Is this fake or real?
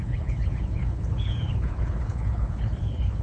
fake